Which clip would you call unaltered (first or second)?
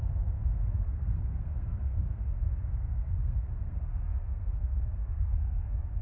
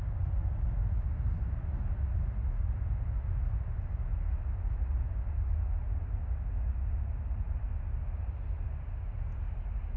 second